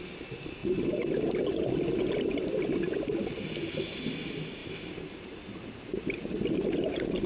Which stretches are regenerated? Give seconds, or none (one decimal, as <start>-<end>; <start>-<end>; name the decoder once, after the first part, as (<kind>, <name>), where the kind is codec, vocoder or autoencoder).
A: 4.6-6.7 (vocoder, BigVGAN v2)